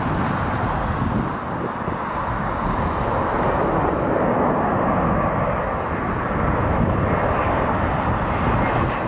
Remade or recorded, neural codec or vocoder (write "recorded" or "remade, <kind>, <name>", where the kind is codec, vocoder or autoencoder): recorded